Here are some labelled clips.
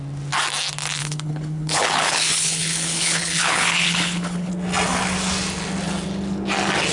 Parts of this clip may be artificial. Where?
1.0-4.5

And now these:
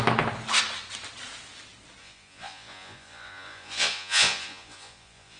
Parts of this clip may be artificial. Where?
2.0-5.4

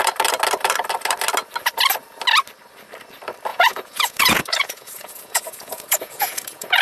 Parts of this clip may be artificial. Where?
3.5-6.8